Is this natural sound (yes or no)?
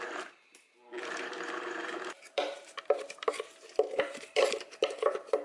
no